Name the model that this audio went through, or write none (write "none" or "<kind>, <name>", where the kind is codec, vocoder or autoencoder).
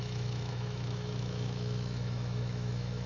autoencoder, DAC-VAE